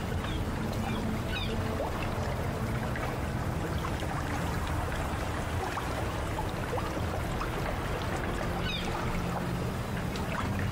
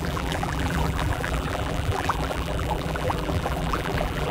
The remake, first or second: second